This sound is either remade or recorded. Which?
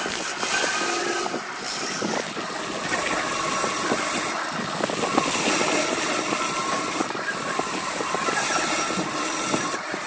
recorded